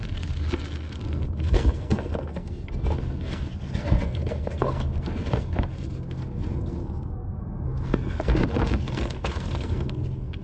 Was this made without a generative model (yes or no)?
no